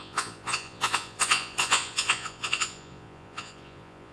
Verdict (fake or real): fake